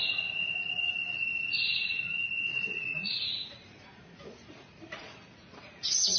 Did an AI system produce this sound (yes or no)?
yes